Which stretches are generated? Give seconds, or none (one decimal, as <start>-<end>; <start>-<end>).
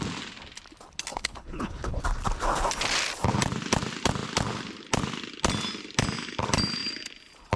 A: 1.1-2.0